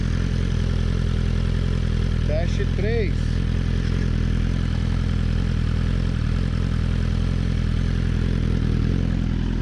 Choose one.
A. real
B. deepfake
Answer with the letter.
A